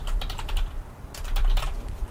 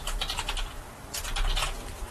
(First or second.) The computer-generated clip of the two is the first